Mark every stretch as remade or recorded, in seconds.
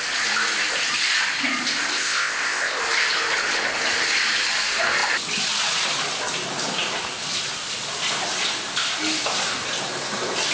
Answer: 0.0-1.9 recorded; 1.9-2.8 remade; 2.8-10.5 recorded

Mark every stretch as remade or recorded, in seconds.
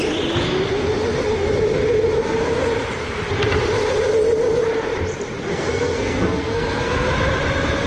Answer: 0.0-5.5 recorded; 5.5-7.1 remade; 7.1-7.9 recorded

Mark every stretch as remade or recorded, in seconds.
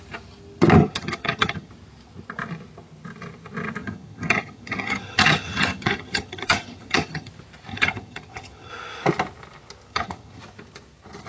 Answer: 0.0-0.8 recorded; 0.8-1.7 remade; 1.7-3.8 recorded; 3.8-7.3 remade; 7.3-7.7 recorded; 7.7-8.7 remade; 8.7-9.9 recorded; 9.9-10.4 remade; 10.4-11.3 recorded